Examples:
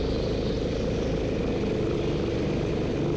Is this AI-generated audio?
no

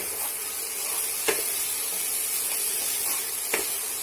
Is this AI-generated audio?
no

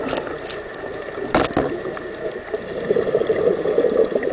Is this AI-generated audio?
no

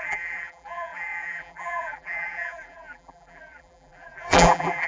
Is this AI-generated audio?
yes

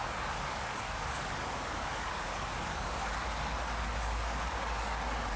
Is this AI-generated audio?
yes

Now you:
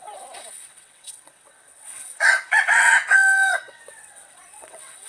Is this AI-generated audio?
yes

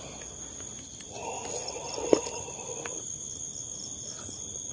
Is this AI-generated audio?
no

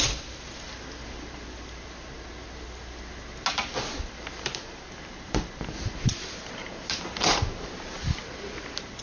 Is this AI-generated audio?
no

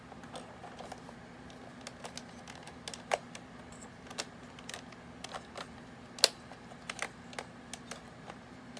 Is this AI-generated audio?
no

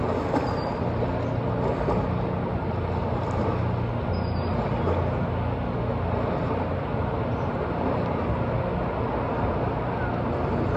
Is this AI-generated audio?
no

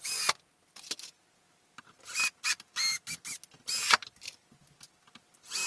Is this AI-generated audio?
no